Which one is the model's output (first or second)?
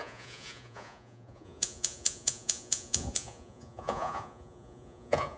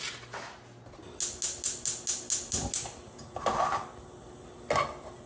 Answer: first